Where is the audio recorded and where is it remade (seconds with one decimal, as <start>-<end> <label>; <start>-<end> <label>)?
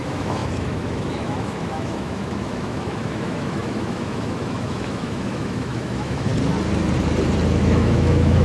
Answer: 0.0-6.3 remade; 6.3-7.6 recorded; 7.6-8.4 remade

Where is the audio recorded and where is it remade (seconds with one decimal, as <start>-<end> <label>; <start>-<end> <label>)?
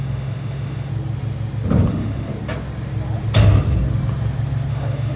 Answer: 0.0-0.9 remade; 0.9-1.9 recorded; 1.9-2.3 remade; 2.3-4.7 recorded; 4.7-5.2 remade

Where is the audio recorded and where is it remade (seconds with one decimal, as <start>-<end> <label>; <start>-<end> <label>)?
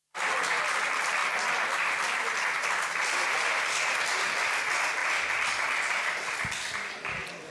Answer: 0.0-7.5 recorded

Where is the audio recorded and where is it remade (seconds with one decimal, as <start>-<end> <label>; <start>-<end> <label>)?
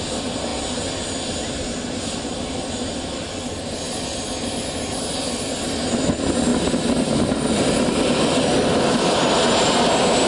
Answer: 0.0-10.3 recorded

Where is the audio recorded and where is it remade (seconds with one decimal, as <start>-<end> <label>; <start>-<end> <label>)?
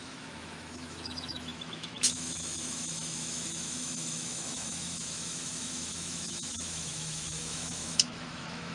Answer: 0.0-8.7 remade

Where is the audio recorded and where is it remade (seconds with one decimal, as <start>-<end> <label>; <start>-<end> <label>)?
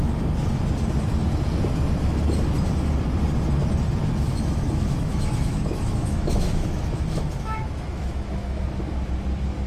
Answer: 0.0-4.3 recorded; 4.3-8.8 remade; 8.8-9.7 recorded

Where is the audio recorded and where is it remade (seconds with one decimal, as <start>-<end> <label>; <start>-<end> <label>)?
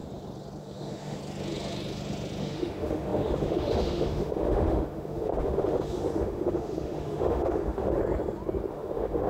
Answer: 0.0-0.6 recorded; 0.6-1.2 remade; 1.2-2.4 recorded; 2.4-8.0 remade; 8.0-8.7 recorded; 8.7-9.3 remade